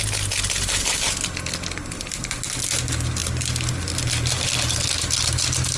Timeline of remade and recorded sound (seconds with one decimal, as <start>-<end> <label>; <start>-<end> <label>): 0.0-5.8 recorded